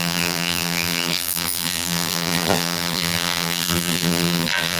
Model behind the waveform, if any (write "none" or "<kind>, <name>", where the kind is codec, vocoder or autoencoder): vocoder, BigVGAN v2